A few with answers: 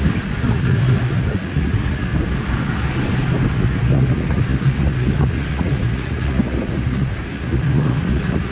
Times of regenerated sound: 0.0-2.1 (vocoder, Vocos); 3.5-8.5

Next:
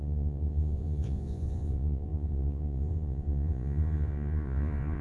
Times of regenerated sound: 0.0-5.0 (vocoder, Vocos)

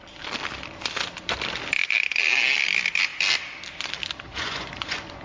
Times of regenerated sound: 4.3-5.2 (vocoder, Vocos)

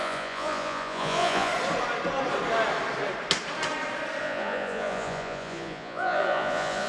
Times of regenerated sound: 0.0-1.5 (vocoder, Vocos); 4.2-6.9

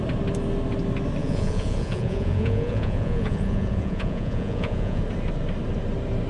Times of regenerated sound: 1.2-5.0 (vocoder, Vocos)